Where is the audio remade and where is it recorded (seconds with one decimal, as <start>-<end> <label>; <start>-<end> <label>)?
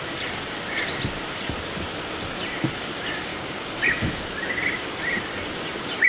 0.0-3.3 recorded; 3.3-3.8 remade; 3.8-6.1 recorded